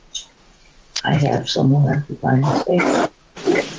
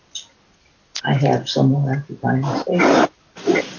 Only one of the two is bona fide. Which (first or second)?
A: second